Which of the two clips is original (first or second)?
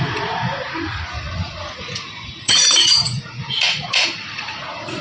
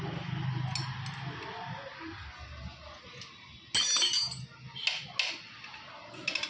second